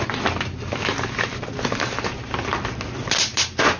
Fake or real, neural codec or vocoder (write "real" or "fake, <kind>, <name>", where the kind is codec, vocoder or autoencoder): real